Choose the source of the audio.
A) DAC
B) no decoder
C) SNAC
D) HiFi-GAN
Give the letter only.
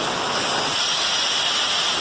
B